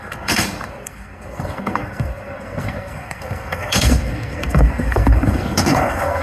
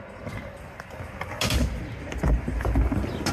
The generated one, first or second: first